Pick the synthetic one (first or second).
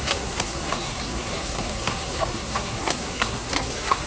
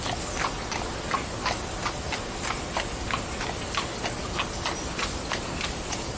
first